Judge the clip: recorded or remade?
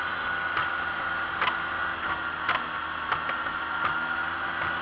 recorded